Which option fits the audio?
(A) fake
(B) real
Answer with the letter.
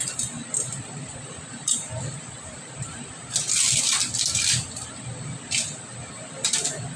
B